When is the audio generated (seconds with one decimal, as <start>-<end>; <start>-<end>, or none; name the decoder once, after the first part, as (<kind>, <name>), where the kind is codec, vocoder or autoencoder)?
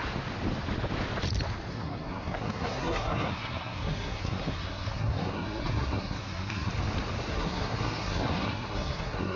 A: 1.7-6.7 (codec, SNAC); 7.3-9.4